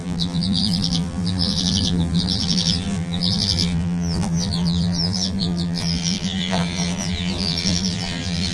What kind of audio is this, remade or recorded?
remade